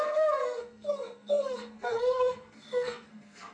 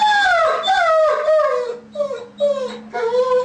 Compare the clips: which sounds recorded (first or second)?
second